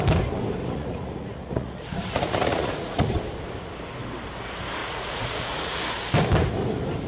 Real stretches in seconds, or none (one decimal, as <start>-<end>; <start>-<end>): 0.0-0.6; 3.1-4.8; 5.8-7.1

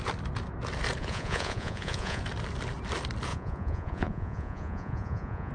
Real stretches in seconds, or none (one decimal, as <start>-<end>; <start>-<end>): 0.0-1.0; 2.2-3.3

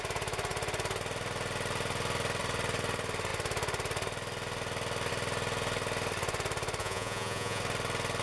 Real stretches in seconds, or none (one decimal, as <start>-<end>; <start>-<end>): 0.0-6.8; 7.6-8.2

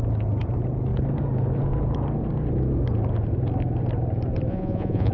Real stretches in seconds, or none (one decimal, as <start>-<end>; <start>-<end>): 0.0-4.5

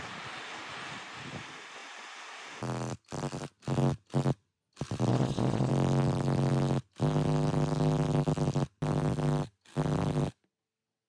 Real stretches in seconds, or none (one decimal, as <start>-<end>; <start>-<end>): 0.0-5.1; 5.7-11.1

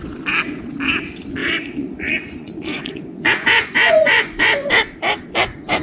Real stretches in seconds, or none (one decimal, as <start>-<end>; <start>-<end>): 0.0-1.4; 4.7-5.8

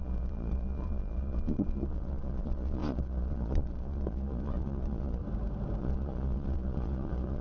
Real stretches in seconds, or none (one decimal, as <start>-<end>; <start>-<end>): 5.2-5.8

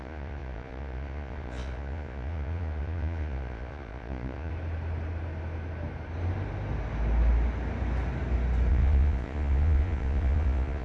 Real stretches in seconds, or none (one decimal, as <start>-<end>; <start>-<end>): 4.5-8.7